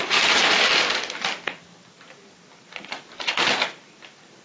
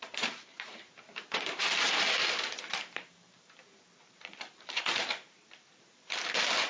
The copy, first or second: second